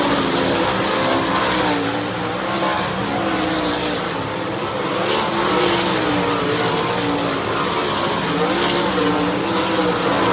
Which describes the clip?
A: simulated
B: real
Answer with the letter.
B